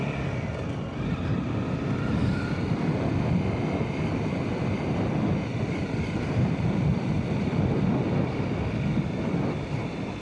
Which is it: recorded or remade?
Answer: recorded